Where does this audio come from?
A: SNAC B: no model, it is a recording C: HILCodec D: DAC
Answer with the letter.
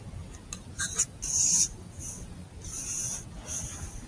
B